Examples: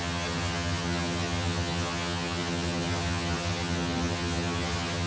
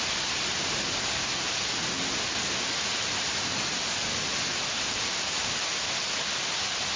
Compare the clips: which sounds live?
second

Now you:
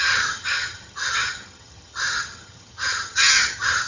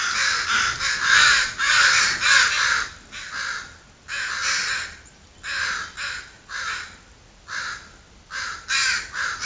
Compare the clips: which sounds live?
second